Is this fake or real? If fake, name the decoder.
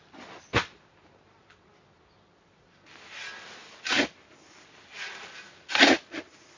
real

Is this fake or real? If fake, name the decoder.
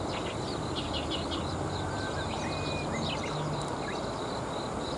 real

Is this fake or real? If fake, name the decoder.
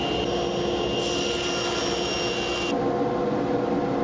real